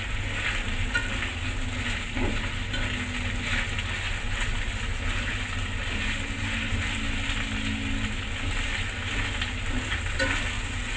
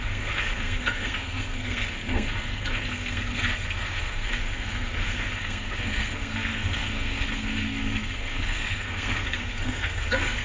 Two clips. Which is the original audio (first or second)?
first